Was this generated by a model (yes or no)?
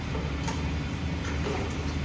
yes